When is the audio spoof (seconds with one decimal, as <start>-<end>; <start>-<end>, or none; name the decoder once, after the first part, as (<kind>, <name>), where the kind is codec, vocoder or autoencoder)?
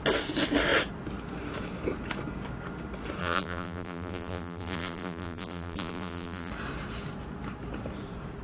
3.2-6.5 (vocoder, BigVGAN v2)